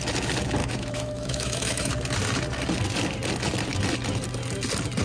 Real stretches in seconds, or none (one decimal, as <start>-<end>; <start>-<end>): 0.0-0.6; 1.9-5.0